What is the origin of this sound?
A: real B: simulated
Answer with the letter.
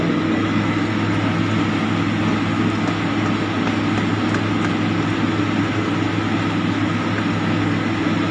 A